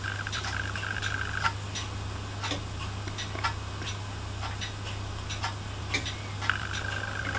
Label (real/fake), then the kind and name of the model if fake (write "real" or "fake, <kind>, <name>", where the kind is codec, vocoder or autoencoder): real